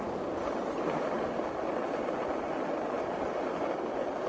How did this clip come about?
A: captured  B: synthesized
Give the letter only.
A